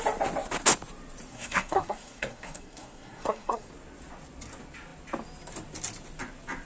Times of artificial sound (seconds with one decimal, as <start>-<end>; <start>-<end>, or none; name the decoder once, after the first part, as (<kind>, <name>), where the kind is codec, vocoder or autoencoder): 1.3-3.7 (codec, SNAC)